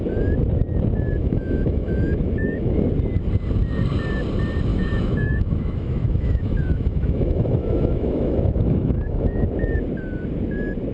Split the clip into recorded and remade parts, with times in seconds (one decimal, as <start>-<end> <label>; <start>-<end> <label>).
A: 0.0-1.2 recorded; 1.2-2.8 remade; 2.8-4.7 recorded; 4.7-9.5 remade; 9.5-10.9 recorded